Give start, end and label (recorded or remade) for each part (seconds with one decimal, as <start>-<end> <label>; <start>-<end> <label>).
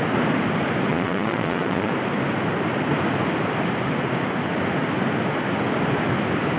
0.0-0.9 recorded; 0.9-1.9 remade; 1.9-6.6 recorded